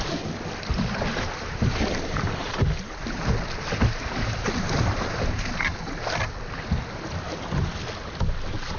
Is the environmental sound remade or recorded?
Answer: recorded